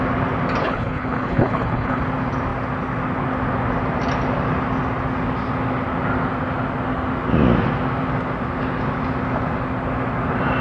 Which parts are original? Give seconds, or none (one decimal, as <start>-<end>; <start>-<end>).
0.0-0.6; 2.0-10.6